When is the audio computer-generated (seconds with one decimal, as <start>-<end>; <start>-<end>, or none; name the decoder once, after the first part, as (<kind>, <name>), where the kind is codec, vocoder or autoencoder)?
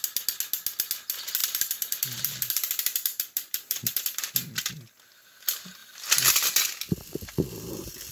1.4-4.7 (vocoder, BigVGAN v2)